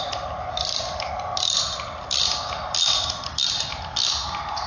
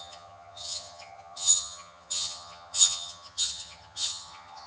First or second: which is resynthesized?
second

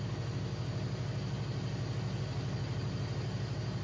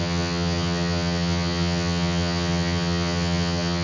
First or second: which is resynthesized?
second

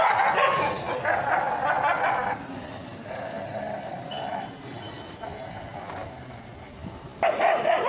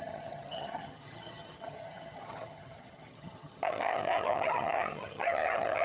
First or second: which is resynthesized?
second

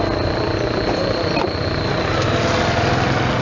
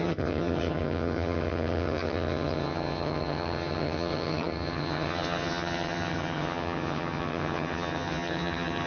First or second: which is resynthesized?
second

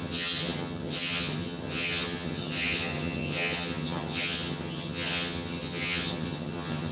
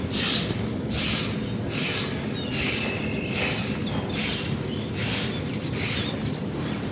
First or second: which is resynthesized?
first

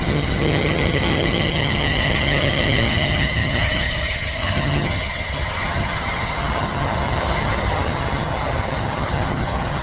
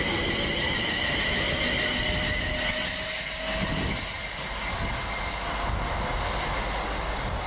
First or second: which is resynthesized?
first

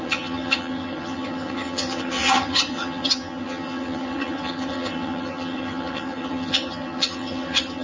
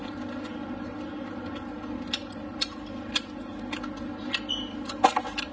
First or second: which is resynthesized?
first